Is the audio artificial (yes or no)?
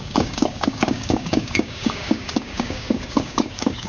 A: yes